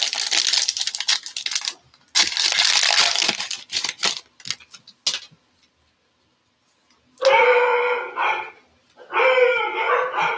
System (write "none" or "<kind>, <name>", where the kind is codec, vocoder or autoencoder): none